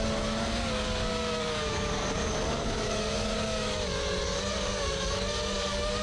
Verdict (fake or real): fake